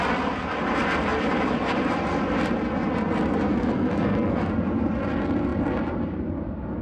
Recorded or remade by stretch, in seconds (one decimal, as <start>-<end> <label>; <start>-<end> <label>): 0.0-3.5 recorded; 3.5-4.5 remade; 4.5-6.8 recorded